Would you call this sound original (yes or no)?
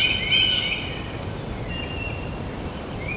yes